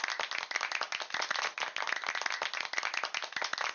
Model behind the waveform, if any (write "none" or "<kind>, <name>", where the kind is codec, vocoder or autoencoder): none